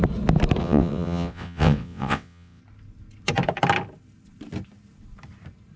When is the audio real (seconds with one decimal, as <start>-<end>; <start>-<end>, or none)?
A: 0.0-0.6; 2.6-5.8